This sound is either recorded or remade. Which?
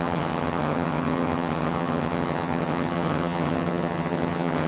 remade